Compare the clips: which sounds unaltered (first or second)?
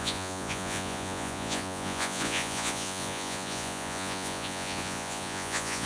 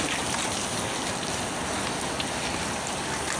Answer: second